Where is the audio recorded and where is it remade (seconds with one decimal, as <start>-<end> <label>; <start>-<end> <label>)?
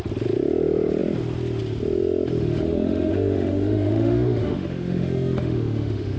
0.0-2.4 recorded; 2.4-6.2 remade